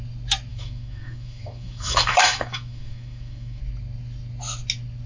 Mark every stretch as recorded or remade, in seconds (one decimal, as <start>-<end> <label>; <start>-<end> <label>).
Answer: 0.0-0.5 recorded; 0.5-3.6 remade; 3.6-5.1 recorded